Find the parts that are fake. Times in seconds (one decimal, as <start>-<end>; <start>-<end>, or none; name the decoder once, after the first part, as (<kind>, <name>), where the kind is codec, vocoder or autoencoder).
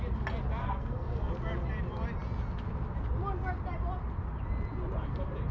0.6-1.3 (codec, SNAC)